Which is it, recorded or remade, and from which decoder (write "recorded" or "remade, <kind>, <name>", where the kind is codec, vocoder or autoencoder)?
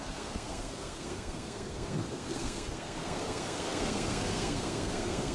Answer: remade, codec, SNAC